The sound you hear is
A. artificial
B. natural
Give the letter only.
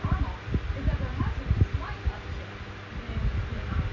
B